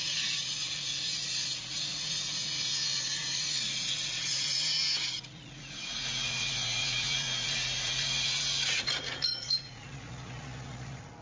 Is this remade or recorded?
remade